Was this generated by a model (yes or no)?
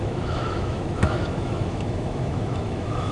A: yes